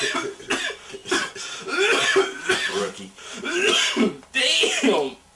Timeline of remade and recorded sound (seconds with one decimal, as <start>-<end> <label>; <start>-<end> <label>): 0.0-5.4 recorded